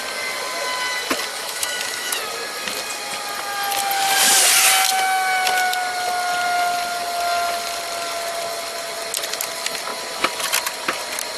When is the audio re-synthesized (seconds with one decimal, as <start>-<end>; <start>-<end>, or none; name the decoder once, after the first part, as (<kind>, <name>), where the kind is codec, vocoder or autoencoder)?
1.3-2.2 (autoencoder, DAC-VAE)